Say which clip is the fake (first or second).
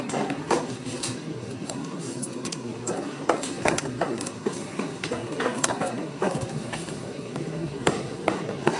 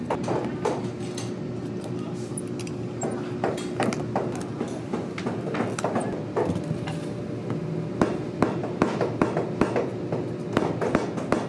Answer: first